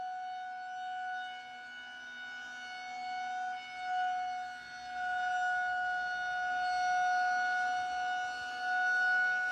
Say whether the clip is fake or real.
real